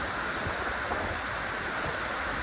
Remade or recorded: recorded